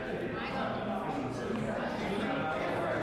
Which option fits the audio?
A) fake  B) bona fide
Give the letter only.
B